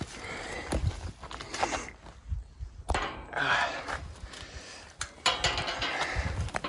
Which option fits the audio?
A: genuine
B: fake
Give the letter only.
A